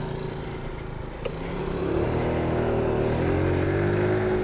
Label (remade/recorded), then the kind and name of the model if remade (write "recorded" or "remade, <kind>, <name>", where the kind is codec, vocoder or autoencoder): recorded